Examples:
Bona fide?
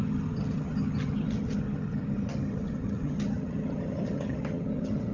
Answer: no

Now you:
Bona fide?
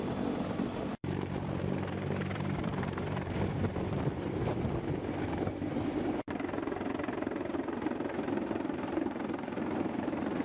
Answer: no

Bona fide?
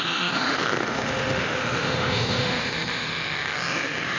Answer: no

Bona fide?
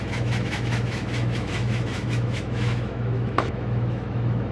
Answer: no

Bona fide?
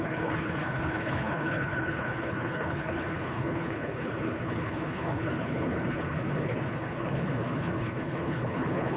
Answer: no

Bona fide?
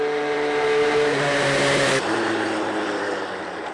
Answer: no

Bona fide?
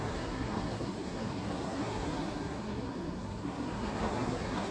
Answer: no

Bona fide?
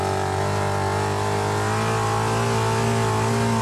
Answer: yes